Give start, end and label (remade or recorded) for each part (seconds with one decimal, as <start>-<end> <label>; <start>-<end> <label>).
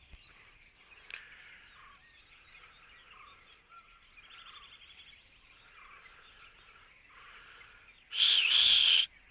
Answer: 0.0-9.3 recorded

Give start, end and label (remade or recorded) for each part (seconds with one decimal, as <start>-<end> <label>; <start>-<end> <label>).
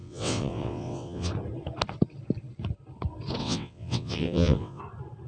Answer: 0.0-1.3 remade; 1.3-3.4 recorded; 3.4-4.8 remade; 4.8-5.3 recorded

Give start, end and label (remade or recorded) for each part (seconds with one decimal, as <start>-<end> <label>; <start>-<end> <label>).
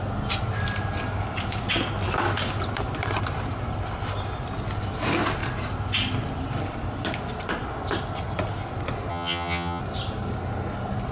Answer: 0.0-9.1 recorded; 9.1-9.8 remade; 9.8-11.1 recorded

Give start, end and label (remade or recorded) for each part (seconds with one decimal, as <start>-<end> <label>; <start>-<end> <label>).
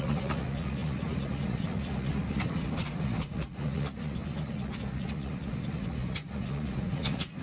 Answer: 0.0-7.4 remade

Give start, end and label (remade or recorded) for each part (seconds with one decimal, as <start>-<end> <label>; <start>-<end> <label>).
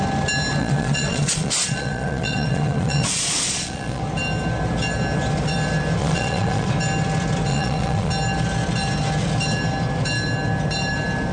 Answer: 0.0-0.6 recorded; 0.6-4.0 remade; 4.0-6.0 recorded; 6.0-6.7 remade; 6.7-7.5 recorded; 7.5-8.1 remade; 8.1-11.3 recorded